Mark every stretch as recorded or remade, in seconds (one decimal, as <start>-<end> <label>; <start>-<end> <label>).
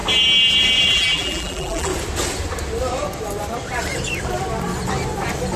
0.0-0.9 recorded; 0.9-1.9 remade; 1.9-5.6 recorded